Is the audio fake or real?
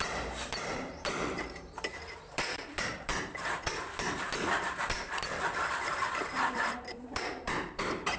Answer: fake